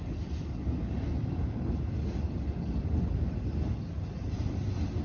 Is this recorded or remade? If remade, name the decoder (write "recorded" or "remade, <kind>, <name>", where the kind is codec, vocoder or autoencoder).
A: recorded